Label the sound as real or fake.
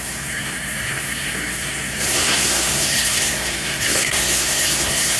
fake